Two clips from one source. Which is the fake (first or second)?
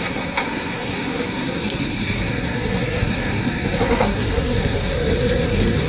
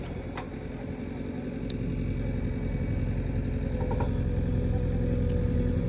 first